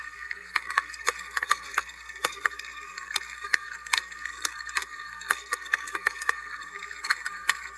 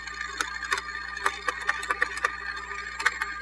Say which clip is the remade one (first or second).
first